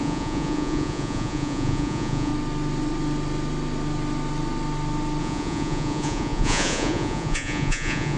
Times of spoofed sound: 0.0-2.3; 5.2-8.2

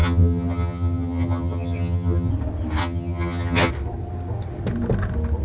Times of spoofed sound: 0.0-2.3; 2.8-3.7

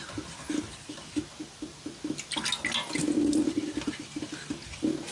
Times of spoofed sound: none

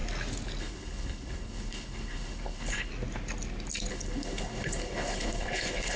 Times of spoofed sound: 0.6-2.9; 3.9-6.0

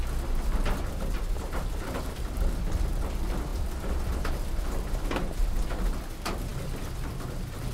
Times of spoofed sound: 3.5-5.0

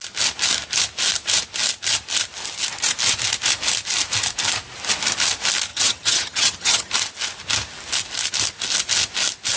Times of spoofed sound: 5.7-6.9

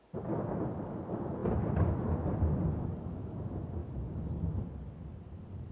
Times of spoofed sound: none